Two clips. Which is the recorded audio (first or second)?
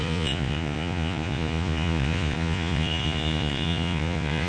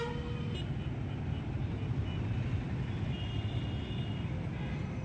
second